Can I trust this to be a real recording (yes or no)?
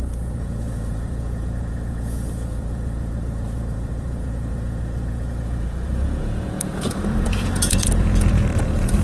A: no